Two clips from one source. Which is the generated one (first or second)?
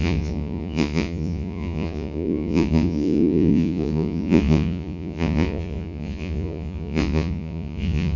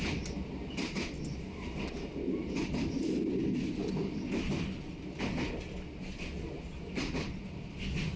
first